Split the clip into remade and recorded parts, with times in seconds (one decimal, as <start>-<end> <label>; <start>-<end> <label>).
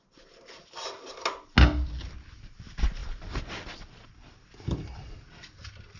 0.0-6.0 recorded